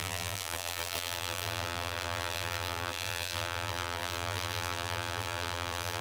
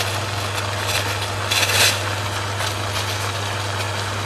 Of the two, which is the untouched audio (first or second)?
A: second